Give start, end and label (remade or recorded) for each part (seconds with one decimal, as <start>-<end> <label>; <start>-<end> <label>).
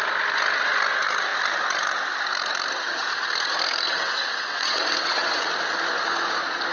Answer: 0.0-3.9 recorded; 3.9-5.4 remade; 5.4-6.7 recorded